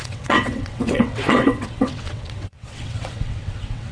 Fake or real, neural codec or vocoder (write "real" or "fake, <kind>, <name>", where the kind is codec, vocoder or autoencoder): fake, vocoder, WaveNeXt